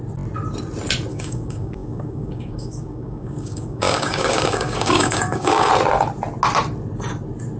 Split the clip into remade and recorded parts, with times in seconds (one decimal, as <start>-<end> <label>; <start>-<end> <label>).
0.0-1.1 recorded; 1.1-5.7 remade; 5.7-7.6 recorded